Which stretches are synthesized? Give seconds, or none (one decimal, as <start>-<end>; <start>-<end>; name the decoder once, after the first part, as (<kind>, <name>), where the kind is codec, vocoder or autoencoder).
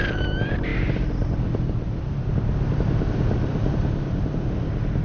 none